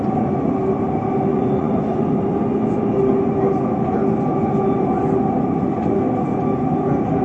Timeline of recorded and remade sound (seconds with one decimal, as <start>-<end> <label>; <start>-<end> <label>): 0.0-1.3 recorded; 1.3-2.1 remade; 2.1-7.2 recorded